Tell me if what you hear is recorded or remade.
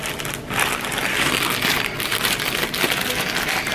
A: recorded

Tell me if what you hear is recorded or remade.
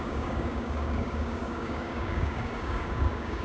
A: remade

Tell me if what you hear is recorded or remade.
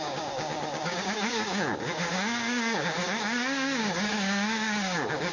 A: remade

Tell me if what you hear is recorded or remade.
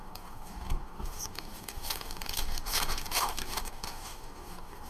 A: remade